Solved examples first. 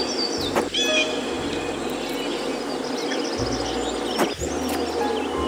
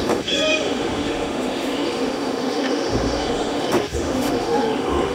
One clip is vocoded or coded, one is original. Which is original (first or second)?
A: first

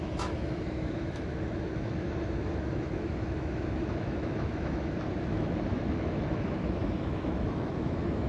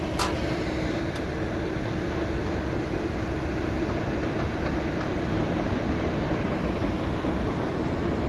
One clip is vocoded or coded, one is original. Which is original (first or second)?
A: second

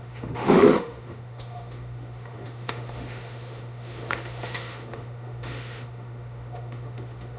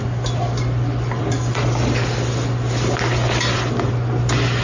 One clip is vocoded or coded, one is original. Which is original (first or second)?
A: second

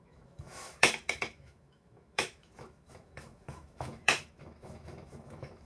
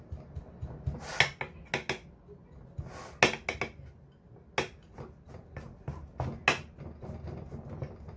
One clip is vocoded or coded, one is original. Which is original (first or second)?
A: second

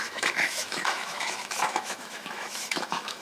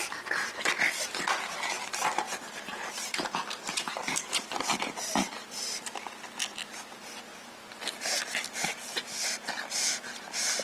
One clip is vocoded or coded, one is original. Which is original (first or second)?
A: second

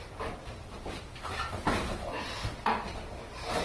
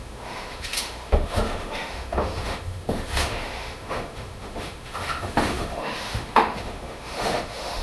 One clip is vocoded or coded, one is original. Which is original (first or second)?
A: first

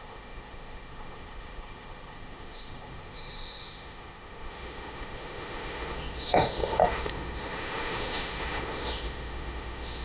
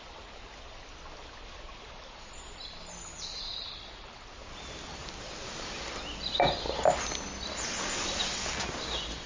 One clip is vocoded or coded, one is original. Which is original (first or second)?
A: second